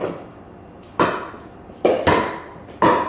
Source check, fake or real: real